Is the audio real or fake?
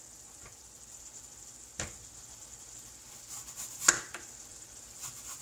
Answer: real